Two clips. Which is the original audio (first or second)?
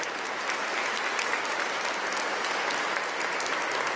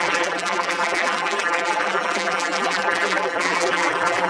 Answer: first